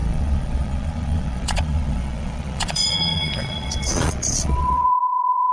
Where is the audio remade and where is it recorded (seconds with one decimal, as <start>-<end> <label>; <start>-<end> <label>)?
0.0-5.5 remade